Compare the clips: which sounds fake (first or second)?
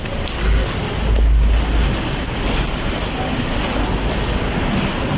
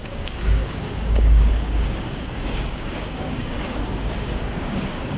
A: second